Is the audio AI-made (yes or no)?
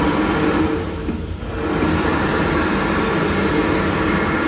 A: no